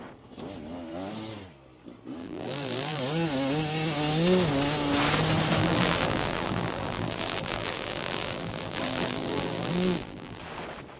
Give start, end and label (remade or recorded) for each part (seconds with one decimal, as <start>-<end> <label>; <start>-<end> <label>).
0.0-2.2 recorded; 2.2-3.0 remade; 3.0-5.6 recorded; 5.6-10.4 remade; 10.4-11.0 recorded